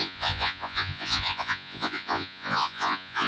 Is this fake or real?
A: fake